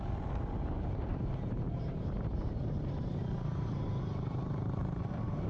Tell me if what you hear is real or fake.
fake